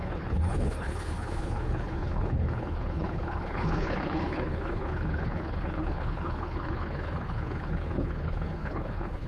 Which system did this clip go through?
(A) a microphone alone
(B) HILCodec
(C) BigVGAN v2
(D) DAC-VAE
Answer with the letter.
B